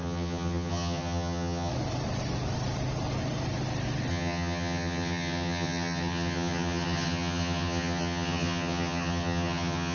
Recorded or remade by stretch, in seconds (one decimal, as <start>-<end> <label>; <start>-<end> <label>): 0.0-1.7 remade; 1.7-4.1 recorded; 4.1-9.9 remade